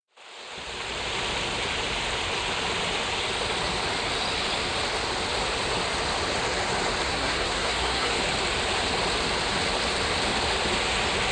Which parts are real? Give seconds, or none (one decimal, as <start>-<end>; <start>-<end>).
0.0-7.1; 8.1-11.3